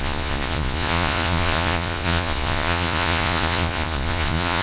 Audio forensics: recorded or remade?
remade